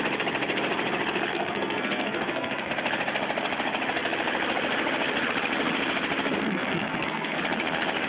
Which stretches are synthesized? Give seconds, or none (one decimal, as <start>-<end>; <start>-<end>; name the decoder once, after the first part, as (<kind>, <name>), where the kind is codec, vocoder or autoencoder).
1.3-2.7 (codec, SNAC); 6.4-7.4